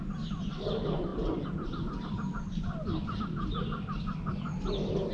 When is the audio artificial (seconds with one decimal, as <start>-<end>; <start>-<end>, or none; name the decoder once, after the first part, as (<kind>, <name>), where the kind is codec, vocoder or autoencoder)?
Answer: none